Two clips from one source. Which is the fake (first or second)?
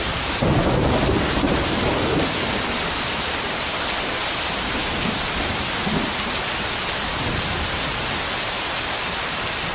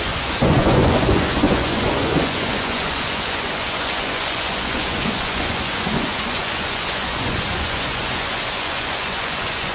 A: second